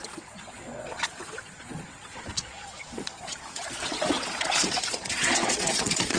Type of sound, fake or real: fake